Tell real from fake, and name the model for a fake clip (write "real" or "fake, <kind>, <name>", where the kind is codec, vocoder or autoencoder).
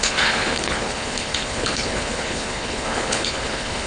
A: fake, codec, HILCodec